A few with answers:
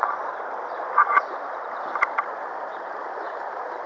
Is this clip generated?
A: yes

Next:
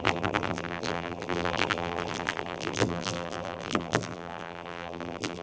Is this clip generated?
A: yes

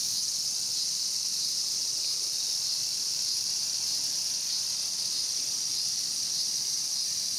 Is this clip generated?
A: yes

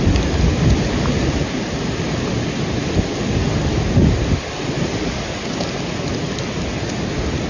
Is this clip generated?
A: no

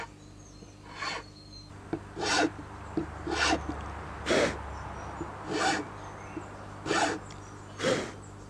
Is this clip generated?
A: no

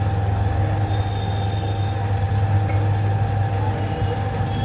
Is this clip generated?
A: no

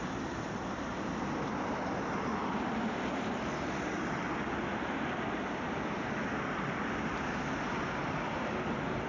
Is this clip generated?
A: yes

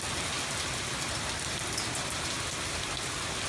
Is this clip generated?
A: no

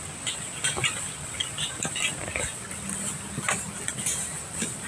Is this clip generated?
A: no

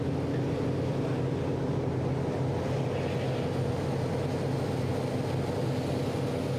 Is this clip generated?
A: no